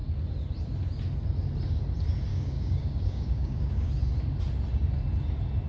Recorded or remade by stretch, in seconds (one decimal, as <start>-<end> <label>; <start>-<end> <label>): 0.0-2.3 recorded; 2.3-3.9 remade; 3.9-5.7 recorded